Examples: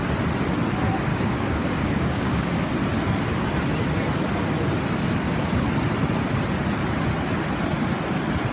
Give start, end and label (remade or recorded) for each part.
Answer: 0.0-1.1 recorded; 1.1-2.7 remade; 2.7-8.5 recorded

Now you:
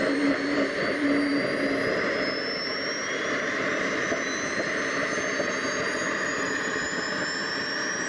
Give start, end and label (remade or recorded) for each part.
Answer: 0.0-8.1 recorded

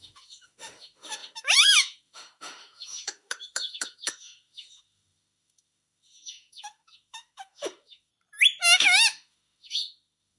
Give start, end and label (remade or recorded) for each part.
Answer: 0.0-8.1 remade; 8.1-8.6 recorded; 8.6-10.4 remade